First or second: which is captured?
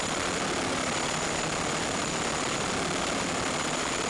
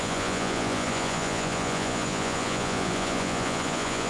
first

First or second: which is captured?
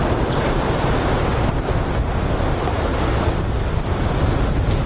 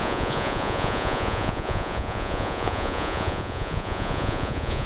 first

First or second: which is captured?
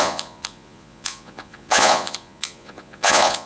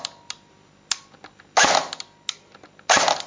second